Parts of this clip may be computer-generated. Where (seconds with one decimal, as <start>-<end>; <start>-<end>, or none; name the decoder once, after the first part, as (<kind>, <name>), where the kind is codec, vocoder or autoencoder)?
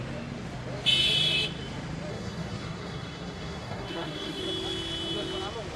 2.1-4.4 (codec, SNAC)